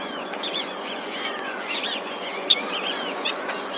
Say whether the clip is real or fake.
fake